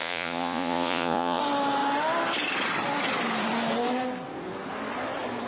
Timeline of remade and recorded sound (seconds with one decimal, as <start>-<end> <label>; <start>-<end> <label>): 0.0-1.4 remade; 1.4-5.5 recorded